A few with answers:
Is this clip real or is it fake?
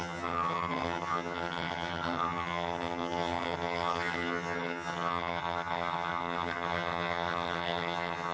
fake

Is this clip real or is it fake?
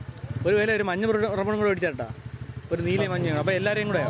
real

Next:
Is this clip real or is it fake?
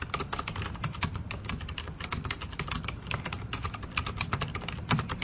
real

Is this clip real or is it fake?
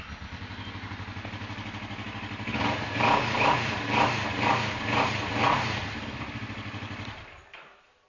real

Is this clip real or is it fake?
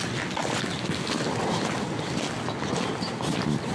real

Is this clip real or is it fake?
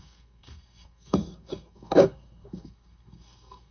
fake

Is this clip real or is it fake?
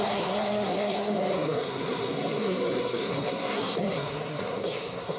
fake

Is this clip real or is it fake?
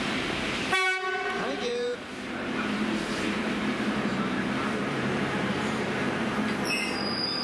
fake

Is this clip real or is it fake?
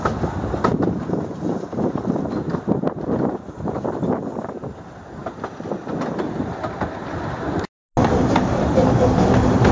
real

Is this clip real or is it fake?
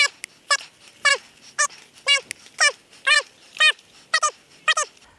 real